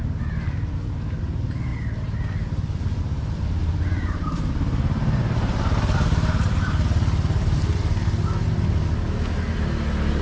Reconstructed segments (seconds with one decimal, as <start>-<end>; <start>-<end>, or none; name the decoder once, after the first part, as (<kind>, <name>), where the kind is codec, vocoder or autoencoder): 3.6-7.8 (vocoder, BigVGAN v2)